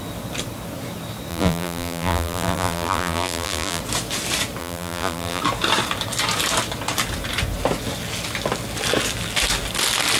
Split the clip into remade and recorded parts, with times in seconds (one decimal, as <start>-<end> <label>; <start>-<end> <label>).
0.0-1.3 recorded; 1.3-3.8 remade; 3.8-4.6 recorded; 4.6-5.4 remade; 5.4-10.2 recorded